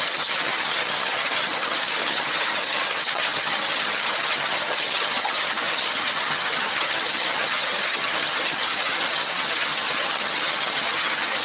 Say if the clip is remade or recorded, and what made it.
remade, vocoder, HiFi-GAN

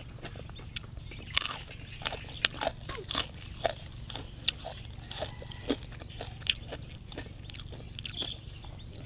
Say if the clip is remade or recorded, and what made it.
recorded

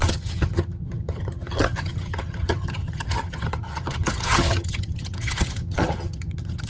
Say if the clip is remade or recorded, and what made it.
remade, vocoder, HiFi-GAN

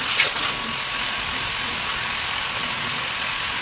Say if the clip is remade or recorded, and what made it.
recorded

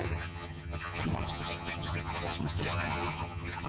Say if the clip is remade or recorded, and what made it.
remade, vocoder, HiFi-GAN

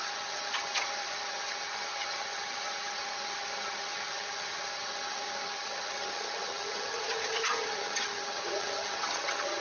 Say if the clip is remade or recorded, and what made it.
remade, vocoder, HiFi-GAN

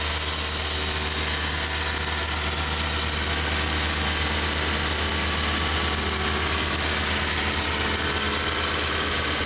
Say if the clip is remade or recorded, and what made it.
recorded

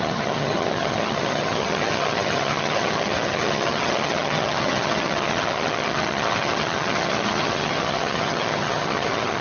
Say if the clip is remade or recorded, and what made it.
remade, vocoder, HiFi-GAN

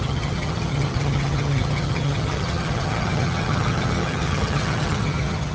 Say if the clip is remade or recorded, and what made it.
remade, vocoder, HiFi-GAN